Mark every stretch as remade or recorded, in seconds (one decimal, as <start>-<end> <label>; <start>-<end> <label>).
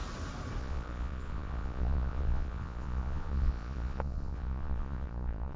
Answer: 0.0-0.6 recorded; 0.6-5.6 remade